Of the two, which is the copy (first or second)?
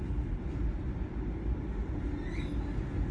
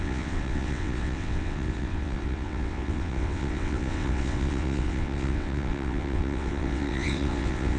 second